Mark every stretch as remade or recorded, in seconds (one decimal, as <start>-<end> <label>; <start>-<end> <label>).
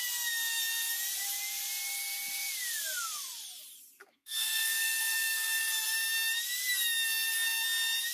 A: 0.0-4.0 recorded; 4.0-5.6 remade; 5.6-8.1 recorded